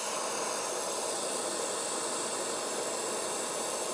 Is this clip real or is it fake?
real